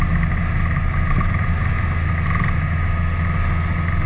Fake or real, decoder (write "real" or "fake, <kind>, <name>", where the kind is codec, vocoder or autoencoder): real